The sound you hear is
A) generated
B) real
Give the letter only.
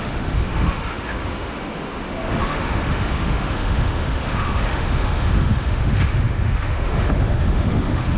A